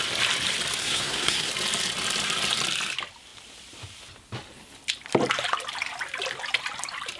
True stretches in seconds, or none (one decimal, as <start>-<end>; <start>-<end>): 0.0-0.8; 1.5-7.2